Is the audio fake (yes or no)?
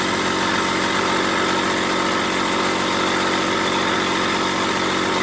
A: no